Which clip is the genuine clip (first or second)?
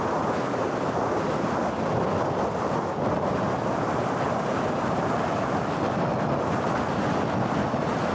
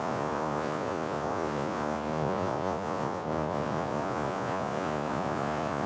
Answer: first